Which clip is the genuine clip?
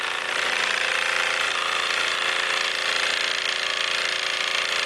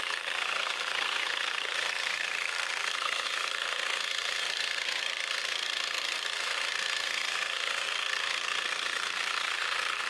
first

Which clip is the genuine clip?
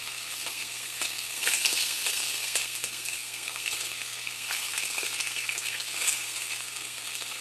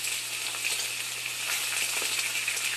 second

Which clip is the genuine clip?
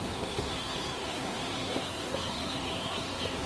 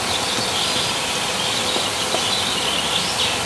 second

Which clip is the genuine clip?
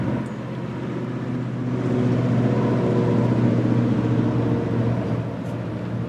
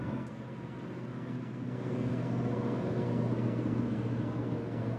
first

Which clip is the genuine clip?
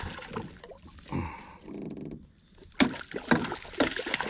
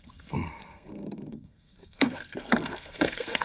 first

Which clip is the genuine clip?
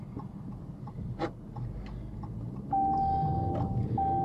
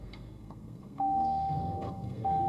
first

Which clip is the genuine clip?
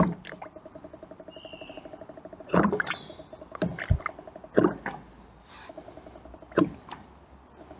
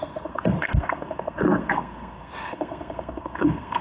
first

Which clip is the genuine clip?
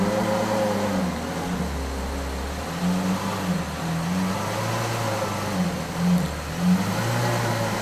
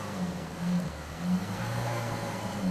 first